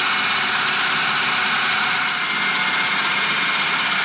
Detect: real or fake real